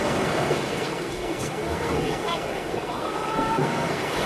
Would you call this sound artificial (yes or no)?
yes